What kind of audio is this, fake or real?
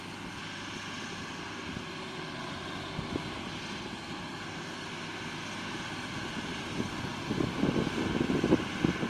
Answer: real